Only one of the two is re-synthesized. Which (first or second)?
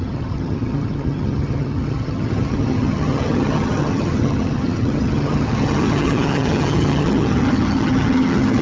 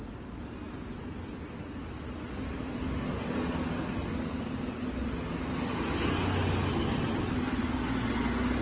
first